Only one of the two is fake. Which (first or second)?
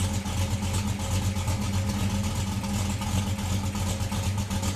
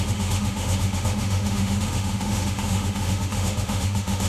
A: second